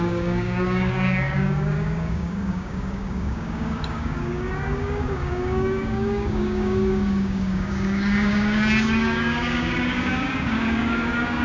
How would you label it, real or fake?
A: fake